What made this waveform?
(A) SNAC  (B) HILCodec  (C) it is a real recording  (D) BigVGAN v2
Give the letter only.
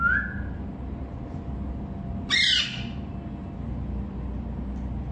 C